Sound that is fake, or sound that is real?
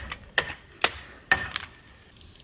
real